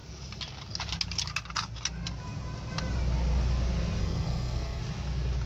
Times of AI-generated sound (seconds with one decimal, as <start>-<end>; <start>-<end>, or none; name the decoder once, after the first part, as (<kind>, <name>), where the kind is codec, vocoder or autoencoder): 4.0-4.8 (codec, SNAC)